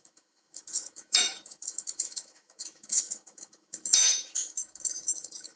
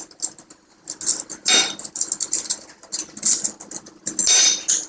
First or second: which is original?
second